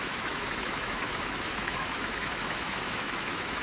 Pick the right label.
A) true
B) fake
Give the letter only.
B